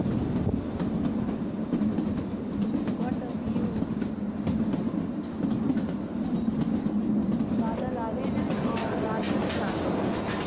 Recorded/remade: recorded